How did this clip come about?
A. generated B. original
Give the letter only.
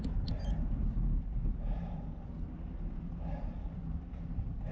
B